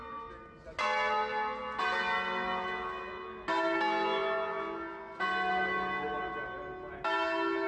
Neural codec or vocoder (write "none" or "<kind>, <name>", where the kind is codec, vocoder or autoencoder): none